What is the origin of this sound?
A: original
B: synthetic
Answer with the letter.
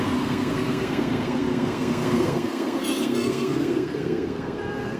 B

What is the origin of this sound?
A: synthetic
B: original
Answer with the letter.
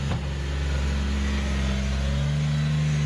B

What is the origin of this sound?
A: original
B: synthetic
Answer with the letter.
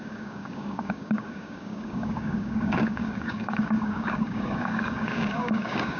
B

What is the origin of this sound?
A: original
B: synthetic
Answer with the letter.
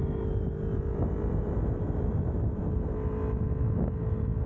A